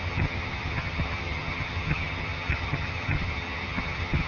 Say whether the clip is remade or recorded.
remade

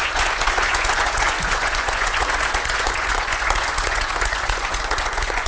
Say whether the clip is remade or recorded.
remade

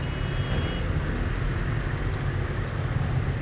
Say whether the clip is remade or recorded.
recorded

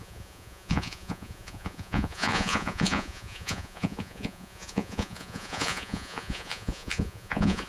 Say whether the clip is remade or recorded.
remade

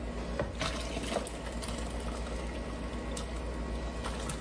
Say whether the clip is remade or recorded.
recorded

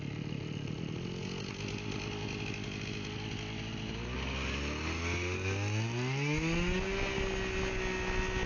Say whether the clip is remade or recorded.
recorded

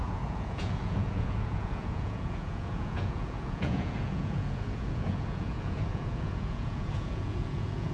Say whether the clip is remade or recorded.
remade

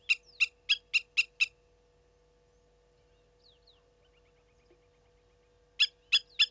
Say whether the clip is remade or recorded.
recorded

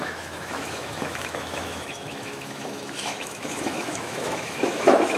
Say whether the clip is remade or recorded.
remade